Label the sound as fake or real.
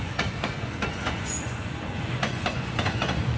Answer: fake